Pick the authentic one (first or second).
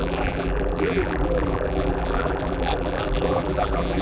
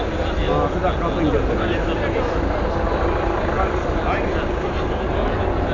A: second